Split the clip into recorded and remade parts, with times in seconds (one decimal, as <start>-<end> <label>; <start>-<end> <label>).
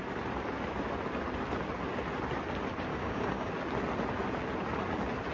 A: 0.0-2.9 recorded; 2.9-3.5 remade; 3.5-5.3 recorded